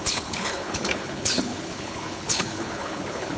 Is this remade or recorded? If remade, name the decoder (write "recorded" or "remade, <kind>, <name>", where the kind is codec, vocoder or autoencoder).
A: remade, codec, HILCodec